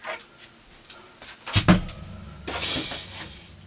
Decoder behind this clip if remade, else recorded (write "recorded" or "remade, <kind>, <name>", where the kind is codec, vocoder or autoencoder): recorded